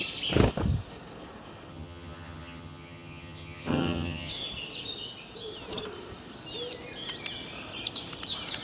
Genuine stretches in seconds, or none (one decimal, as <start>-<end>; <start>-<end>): 0.0-1.7; 4.3-8.6